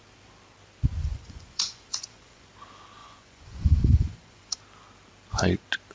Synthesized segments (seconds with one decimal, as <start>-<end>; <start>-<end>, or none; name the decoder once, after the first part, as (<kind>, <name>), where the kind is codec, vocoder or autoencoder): 1.0-2.5 (vocoder, Vocos); 3.0-4.6